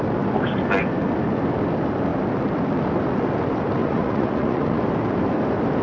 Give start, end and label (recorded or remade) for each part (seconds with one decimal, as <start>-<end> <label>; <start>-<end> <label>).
0.0-3.8 recorded; 3.8-4.8 remade; 4.8-5.8 recorded